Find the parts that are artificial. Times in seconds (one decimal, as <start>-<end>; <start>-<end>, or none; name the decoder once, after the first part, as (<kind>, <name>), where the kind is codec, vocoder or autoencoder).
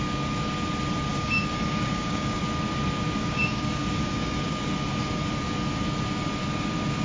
1.1-2.4 (codec, DAC); 3.2-4.7